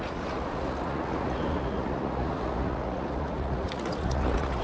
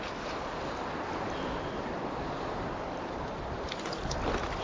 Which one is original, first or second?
second